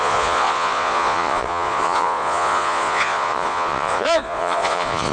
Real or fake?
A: fake